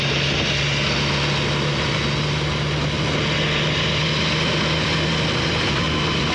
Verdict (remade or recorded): recorded